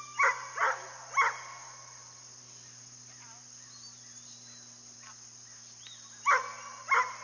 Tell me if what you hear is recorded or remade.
recorded